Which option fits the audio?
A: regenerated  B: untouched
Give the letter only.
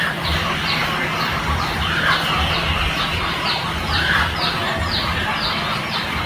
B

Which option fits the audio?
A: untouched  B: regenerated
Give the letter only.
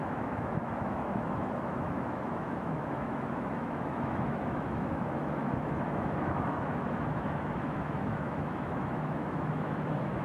B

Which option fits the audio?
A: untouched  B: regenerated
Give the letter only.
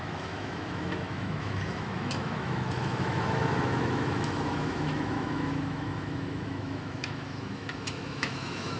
B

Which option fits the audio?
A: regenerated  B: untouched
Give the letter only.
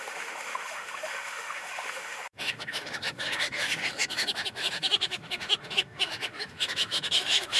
A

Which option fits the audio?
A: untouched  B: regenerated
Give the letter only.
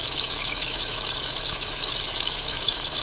B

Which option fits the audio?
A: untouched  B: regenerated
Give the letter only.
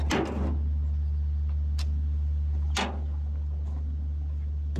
A